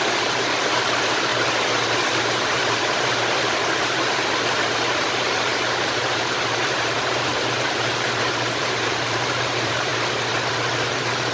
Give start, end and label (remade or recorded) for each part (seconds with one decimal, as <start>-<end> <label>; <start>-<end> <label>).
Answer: 0.0-1.3 remade; 1.3-3.4 recorded; 3.4-9.9 remade; 9.9-10.9 recorded; 10.9-11.3 remade

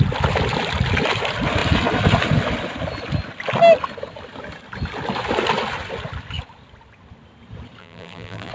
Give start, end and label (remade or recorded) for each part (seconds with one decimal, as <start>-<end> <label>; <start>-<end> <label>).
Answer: 0.0-7.8 recorded; 7.8-8.5 remade

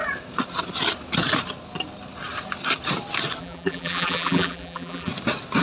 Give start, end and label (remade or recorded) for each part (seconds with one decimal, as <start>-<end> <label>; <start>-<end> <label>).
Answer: 0.0-3.4 recorded; 3.4-5.1 remade; 5.1-5.6 recorded